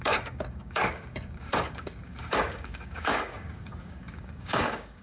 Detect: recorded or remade remade